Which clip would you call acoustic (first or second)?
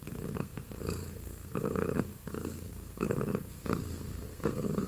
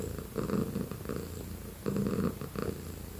second